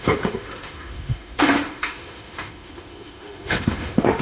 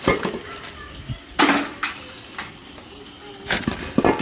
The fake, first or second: first